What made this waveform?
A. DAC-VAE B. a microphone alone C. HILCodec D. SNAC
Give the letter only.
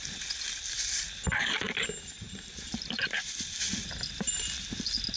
B